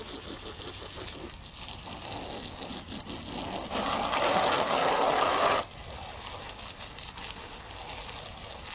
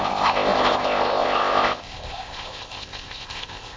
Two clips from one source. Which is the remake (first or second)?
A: second